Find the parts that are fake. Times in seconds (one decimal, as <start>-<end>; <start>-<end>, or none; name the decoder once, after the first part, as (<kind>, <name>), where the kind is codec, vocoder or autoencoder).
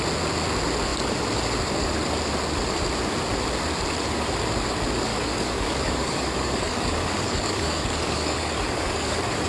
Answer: 5.1-9.5 (codec, DAC)